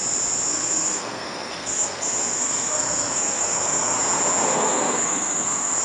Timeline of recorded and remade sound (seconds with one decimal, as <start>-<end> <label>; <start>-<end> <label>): 0.0-0.5 recorded; 0.5-4.0 remade; 4.0-4.5 recorded; 4.5-5.8 remade